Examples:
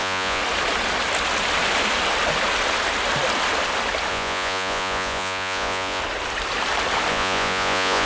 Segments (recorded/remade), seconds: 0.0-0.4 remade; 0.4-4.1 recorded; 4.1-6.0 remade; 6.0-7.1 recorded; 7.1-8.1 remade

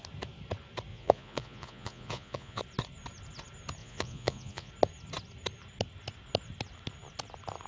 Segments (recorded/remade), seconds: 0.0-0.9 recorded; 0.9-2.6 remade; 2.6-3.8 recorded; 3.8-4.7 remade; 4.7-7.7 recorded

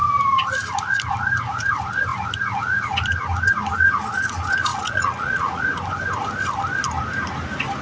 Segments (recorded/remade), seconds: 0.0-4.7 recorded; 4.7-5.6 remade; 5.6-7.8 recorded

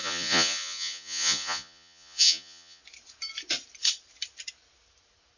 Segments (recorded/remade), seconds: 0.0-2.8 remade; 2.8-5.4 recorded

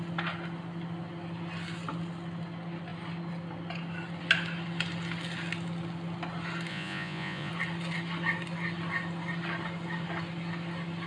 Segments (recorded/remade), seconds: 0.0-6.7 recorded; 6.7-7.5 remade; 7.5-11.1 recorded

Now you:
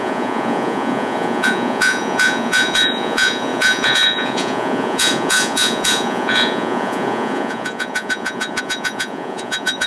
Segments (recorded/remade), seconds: 0.0-9.9 remade

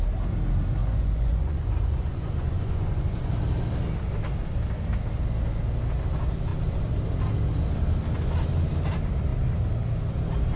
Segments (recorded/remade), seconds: 0.0-0.8 recorded; 0.8-3.3 remade; 3.3-10.6 recorded